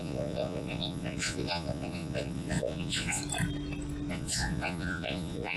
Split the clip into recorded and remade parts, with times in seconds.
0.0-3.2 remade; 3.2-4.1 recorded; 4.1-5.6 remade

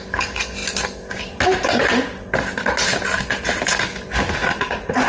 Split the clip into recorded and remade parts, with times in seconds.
0.0-4.4 recorded; 4.4-5.1 remade

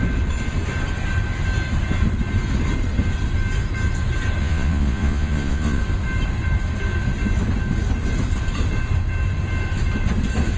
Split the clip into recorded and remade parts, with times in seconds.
0.0-4.4 recorded; 4.4-5.8 remade; 5.8-10.6 recorded

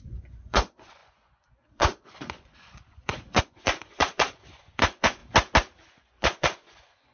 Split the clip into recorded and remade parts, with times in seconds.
0.0-5.2 remade; 5.2-5.9 recorded; 5.9-7.1 remade